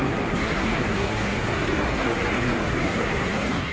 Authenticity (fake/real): fake